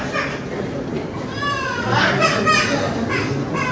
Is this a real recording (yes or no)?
yes